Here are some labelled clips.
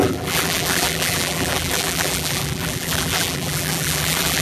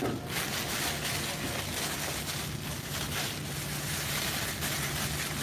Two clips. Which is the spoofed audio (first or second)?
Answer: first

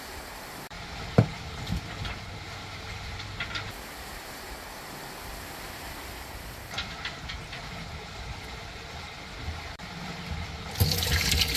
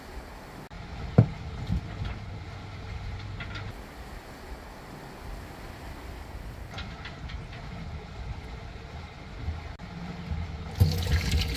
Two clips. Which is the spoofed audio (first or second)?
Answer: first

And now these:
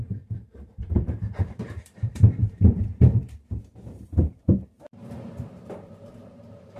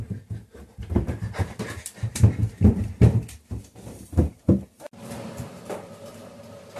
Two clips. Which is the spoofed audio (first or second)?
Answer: first